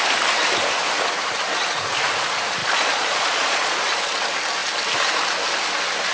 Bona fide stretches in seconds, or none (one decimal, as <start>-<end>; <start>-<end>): 0.0-2.6; 3.7-6.1